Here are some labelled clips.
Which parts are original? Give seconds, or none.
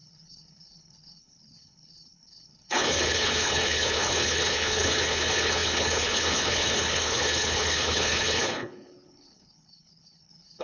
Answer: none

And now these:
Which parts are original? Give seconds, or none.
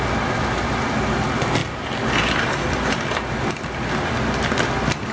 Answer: 0.0-5.1